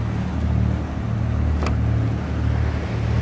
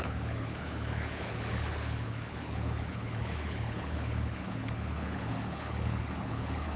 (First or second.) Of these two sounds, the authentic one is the first